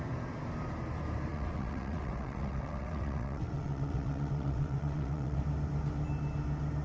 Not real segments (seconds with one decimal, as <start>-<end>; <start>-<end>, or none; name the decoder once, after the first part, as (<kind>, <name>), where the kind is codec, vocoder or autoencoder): 1.3-5.4 (vocoder, WaveNeXt)